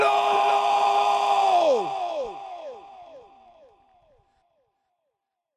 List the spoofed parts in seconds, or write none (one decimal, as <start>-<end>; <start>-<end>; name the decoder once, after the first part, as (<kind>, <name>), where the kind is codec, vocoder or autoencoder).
2.1-5.1 (vocoder, BigVGAN v2)

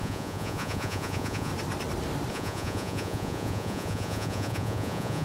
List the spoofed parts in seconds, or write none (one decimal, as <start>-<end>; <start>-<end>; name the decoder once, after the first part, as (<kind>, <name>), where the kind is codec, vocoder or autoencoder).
0.0-1.5 (vocoder, Vocos); 2.3-5.2

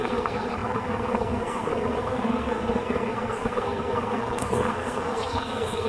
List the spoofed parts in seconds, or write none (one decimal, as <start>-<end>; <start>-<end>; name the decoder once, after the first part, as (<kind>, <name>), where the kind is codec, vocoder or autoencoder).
0.0-5.9 (codec, SNAC)

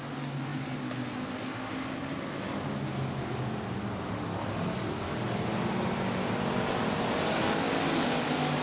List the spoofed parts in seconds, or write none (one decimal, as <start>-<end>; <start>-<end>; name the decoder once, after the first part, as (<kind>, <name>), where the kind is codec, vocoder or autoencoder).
none

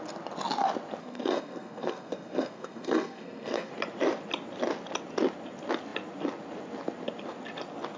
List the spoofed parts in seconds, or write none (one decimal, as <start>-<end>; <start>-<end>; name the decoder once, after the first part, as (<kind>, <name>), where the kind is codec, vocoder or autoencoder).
1.0-3.7 (codec, SNAC)

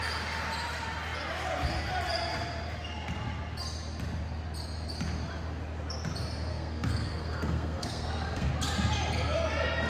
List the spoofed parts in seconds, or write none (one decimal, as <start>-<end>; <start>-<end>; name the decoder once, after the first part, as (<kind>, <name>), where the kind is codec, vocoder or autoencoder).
6.5-8.5 (codec, SNAC)

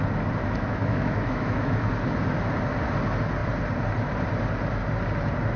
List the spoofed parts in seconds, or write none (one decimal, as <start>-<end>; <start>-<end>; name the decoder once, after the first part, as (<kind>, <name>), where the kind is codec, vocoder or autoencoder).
0.4-1.9 (autoencoder, DAC-VAE)

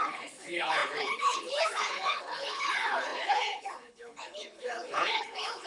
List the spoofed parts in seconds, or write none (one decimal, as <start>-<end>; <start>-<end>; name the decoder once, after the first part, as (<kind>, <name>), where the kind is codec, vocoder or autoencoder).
0.0-5.7 (codec, HILCodec)